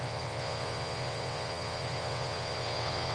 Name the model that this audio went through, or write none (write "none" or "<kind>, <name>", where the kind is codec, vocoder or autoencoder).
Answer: vocoder, WaveNeXt